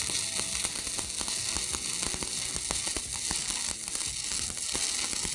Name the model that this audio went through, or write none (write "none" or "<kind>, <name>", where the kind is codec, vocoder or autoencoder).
none